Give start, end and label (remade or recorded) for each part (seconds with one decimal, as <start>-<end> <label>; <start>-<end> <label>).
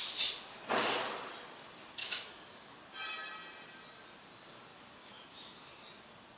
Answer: 0.0-2.0 recorded; 2.0-2.8 remade; 2.8-4.7 recorded; 4.7-5.7 remade; 5.7-6.4 recorded